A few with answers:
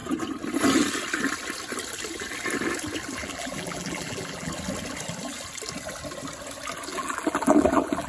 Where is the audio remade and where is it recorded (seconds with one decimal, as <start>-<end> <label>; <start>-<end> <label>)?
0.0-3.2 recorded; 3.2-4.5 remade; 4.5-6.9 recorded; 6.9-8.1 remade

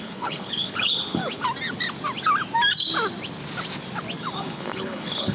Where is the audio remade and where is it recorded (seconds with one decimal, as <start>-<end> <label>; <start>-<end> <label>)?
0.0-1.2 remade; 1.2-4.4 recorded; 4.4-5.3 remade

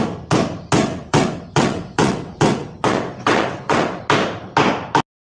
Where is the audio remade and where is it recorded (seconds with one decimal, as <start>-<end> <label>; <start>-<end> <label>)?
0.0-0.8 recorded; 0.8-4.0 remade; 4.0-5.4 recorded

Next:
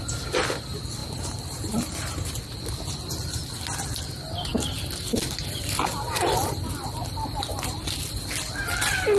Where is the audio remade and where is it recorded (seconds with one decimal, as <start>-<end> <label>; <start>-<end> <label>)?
0.0-1.0 recorded; 1.0-2.4 remade; 2.4-9.2 recorded

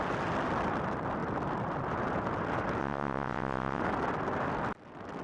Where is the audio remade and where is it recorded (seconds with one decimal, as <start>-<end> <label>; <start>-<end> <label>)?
0.0-2.8 recorded; 2.8-3.8 remade; 3.8-5.2 recorded

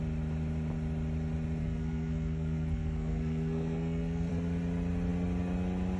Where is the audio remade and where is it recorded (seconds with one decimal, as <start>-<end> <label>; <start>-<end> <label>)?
0.0-1.6 recorded; 1.6-4.3 remade; 4.3-6.0 recorded